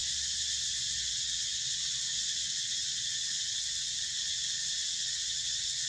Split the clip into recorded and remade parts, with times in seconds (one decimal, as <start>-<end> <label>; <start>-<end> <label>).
0.0-1.0 recorded; 1.0-5.9 remade

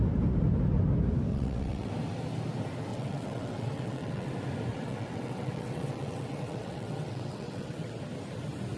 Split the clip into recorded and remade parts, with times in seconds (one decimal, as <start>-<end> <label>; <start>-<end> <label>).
0.0-1.3 recorded; 1.3-1.9 remade; 1.9-2.9 recorded; 2.9-4.3 remade; 4.3-4.7 recorded; 4.7-7.9 remade; 7.9-8.8 recorded

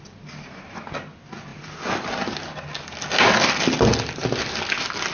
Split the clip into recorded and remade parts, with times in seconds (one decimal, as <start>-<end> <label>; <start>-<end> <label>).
0.0-5.1 recorded

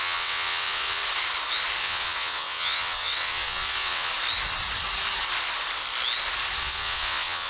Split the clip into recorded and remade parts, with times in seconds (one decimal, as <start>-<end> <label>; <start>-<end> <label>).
0.0-1.0 remade; 1.0-1.8 recorded; 1.8-4.1 remade; 4.1-6.6 recorded; 6.6-7.5 remade